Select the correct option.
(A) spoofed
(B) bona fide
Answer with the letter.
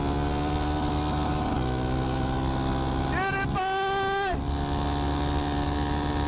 B